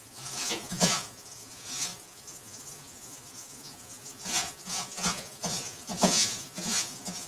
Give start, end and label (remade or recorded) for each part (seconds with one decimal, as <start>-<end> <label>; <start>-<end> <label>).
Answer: 0.0-7.3 remade